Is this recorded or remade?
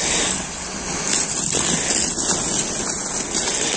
recorded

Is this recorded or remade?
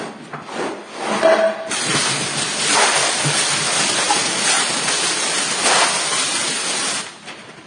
recorded